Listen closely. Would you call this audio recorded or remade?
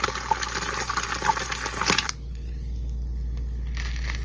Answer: recorded